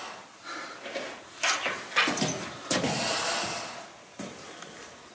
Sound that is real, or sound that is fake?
real